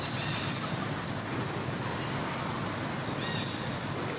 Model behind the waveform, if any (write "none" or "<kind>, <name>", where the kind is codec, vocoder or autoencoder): none